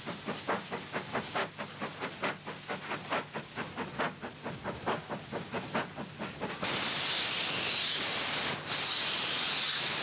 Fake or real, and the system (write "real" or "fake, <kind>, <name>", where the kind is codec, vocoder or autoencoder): real